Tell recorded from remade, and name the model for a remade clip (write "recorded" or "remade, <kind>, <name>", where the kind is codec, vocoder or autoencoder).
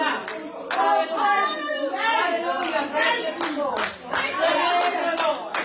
recorded